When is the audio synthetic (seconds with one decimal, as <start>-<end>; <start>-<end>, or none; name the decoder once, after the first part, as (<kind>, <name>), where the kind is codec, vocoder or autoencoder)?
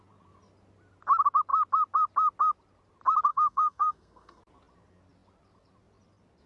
3.3-4.4 (codec, SNAC)